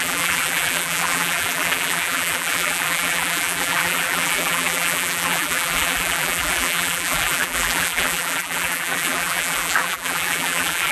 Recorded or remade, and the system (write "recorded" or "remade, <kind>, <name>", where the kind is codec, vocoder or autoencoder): remade, vocoder, BigVGAN v2